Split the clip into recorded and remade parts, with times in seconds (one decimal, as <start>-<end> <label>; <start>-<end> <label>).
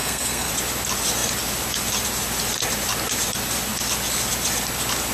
0.0-0.5 remade; 0.5-5.1 recorded